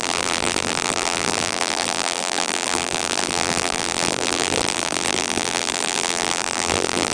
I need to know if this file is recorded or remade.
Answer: remade